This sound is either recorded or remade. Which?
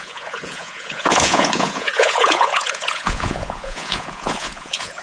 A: remade